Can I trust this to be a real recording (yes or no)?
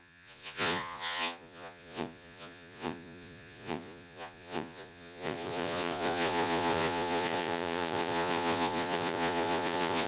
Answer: no